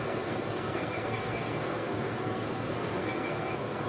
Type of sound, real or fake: fake